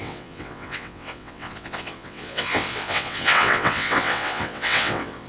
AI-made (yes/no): yes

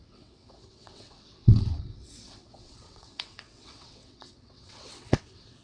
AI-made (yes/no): yes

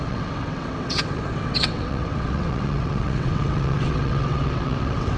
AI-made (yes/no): yes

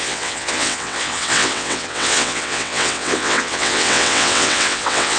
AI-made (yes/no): yes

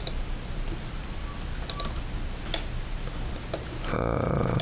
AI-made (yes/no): no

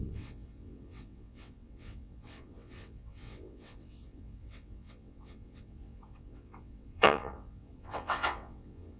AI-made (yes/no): yes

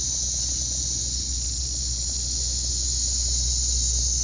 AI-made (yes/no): no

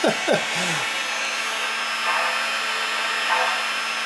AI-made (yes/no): no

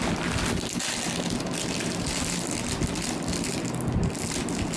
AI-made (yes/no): no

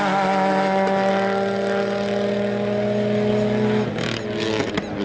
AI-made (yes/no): no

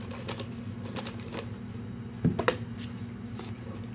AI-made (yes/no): no